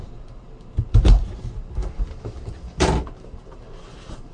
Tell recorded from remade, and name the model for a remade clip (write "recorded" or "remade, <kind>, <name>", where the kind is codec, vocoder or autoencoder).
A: remade, vocoder, BigVGAN v2